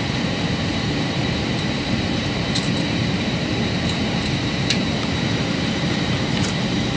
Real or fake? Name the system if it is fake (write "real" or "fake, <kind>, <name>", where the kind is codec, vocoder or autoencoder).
fake, vocoder, BigVGAN v2